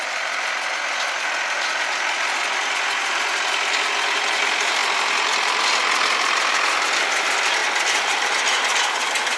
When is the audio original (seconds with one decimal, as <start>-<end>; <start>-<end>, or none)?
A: 0.0-9.4